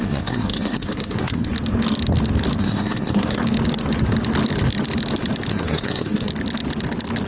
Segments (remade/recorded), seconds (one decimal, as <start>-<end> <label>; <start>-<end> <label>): 0.0-1.5 remade; 1.5-2.6 recorded; 2.6-3.4 remade; 3.4-5.5 recorded; 5.5-6.3 remade; 6.3-7.3 recorded